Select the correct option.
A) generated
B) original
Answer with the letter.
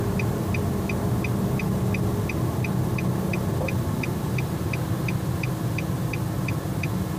B